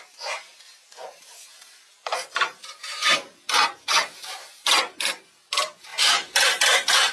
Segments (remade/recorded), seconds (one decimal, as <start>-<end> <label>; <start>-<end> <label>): 0.0-7.1 remade